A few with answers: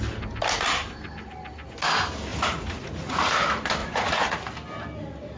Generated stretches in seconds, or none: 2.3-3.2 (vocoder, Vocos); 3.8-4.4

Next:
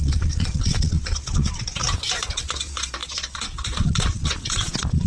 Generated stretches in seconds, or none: 0.0-1.8 (vocoder, Vocos); 2.3-5.1

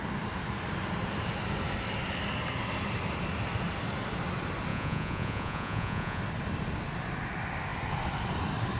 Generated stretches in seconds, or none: 4.7-6.2 (vocoder, Vocos)

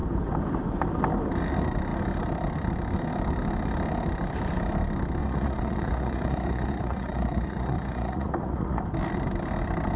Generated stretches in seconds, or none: 5.2-8.8 (vocoder, Vocos)

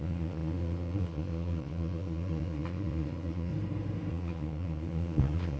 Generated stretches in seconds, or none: 0.0-3.5 (vocoder, Vocos); 4.1-5.6

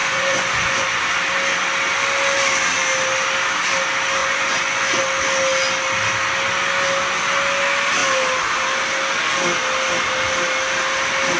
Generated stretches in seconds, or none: 0.0-1.0 (vocoder, Vocos); 4.2-5.0